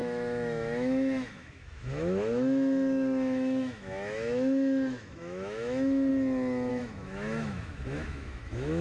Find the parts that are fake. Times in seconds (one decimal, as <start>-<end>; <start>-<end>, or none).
0.0-6.1; 6.7-8.8